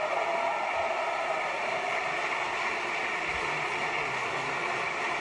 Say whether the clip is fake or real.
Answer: real